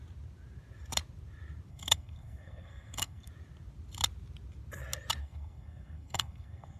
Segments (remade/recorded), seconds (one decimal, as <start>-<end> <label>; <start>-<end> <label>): 0.0-1.7 recorded; 1.7-3.3 remade; 3.3-5.2 recorded; 5.2-6.8 remade